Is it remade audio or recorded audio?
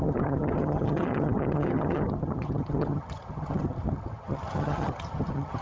remade